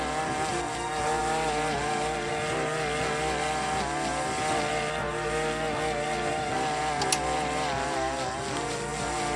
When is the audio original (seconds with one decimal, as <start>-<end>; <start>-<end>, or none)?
0.0-9.4